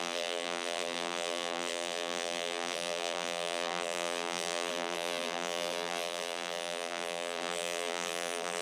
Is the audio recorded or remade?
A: remade